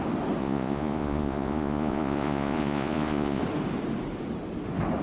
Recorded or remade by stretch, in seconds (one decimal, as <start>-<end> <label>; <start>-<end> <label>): 0.0-0.4 recorded; 0.4-3.4 remade; 3.4-5.0 recorded